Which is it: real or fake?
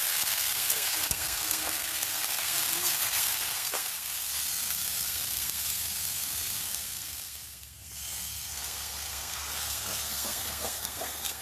fake